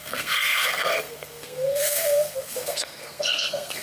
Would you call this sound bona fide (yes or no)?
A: no